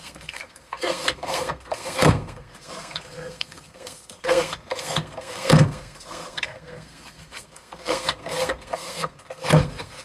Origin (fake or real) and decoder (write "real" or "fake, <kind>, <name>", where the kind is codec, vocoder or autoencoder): fake, codec, SNAC